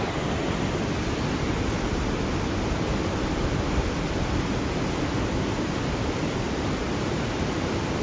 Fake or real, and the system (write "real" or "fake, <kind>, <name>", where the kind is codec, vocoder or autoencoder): real